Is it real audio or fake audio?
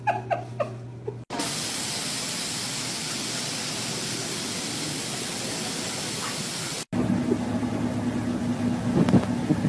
real